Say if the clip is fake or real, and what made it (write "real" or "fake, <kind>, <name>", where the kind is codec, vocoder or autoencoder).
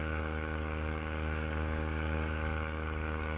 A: fake, codec, DAC